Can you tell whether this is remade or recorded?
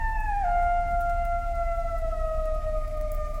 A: remade